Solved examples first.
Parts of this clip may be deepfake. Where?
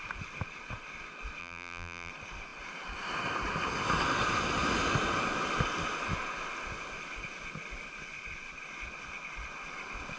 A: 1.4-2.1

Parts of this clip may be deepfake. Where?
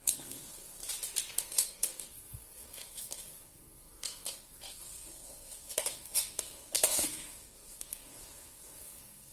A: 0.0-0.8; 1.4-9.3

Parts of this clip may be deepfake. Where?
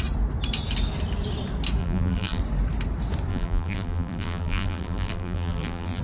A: 1.8-2.4; 3.3-6.0